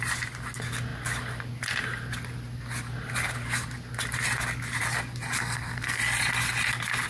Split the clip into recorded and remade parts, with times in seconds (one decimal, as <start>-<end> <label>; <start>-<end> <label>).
0.0-5.4 recorded; 5.4-6.0 remade; 6.0-7.1 recorded